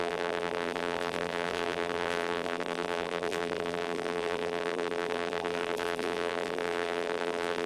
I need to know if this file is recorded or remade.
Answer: remade